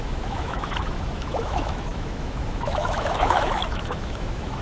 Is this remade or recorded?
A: remade